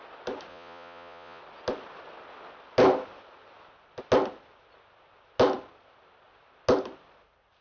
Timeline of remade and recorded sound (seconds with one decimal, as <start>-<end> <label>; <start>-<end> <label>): 0.0-0.5 recorded; 0.5-1.4 remade; 1.4-7.6 recorded